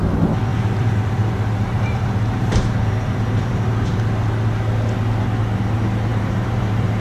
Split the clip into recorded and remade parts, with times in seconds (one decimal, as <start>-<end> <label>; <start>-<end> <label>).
0.0-0.5 recorded; 0.5-4.0 remade; 4.0-6.1 recorded; 6.1-7.0 remade